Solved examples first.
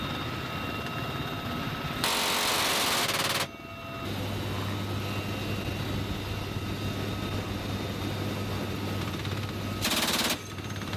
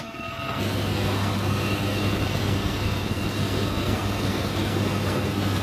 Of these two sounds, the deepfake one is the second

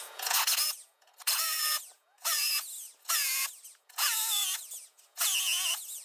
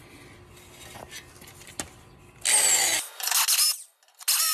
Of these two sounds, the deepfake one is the first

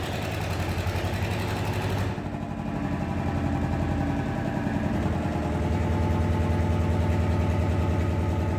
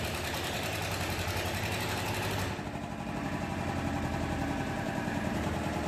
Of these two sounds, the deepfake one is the second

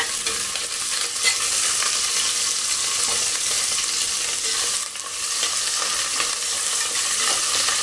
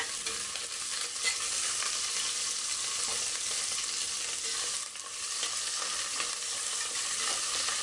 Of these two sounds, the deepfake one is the second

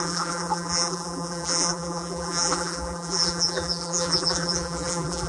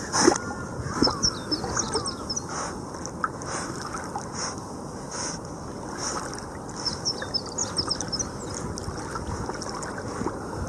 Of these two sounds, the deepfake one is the first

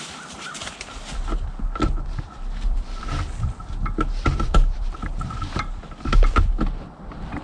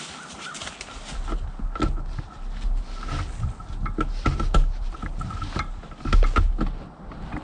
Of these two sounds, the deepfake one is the first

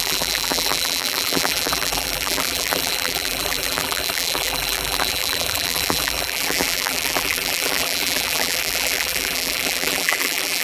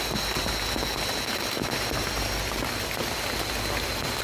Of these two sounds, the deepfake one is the first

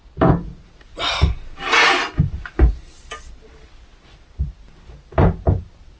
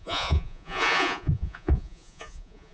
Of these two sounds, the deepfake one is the second